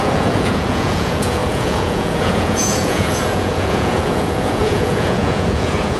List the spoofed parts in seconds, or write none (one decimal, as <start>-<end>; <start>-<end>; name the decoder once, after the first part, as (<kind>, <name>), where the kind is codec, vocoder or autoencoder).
0.0-6.0 (vocoder, Vocos)